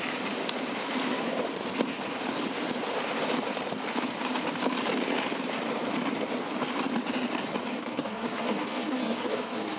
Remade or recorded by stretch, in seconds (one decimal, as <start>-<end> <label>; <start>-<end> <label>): 0.0-7.7 recorded; 7.7-9.8 remade